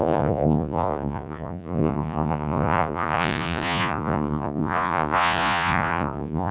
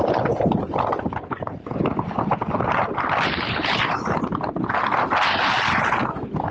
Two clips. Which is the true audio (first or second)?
second